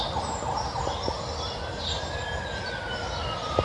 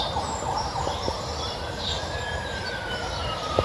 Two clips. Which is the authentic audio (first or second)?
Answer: first